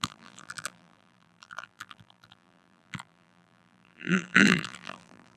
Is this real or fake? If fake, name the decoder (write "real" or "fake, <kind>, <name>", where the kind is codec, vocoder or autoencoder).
fake, vocoder, BigVGAN v2